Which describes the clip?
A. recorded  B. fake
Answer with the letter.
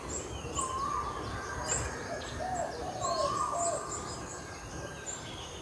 A